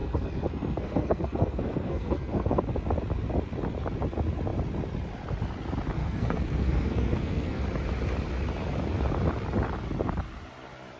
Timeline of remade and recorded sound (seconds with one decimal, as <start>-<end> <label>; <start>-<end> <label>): 0.0-2.6 remade; 2.6-6.0 recorded; 6.0-7.6 remade; 7.6-11.0 recorded